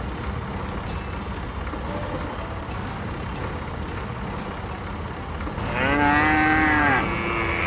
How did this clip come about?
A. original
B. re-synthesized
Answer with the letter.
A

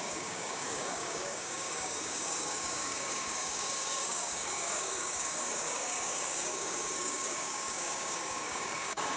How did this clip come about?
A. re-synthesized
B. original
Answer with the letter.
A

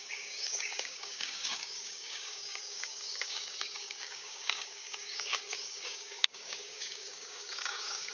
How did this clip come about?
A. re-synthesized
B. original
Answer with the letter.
A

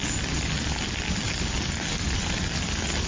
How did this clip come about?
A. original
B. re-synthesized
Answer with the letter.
A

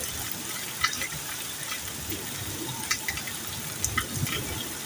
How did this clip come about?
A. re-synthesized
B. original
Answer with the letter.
B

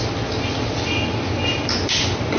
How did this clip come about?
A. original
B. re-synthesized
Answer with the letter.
A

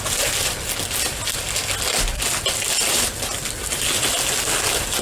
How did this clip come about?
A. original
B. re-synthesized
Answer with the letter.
A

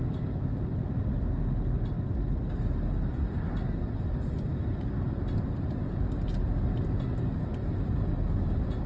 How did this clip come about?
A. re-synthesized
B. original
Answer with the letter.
B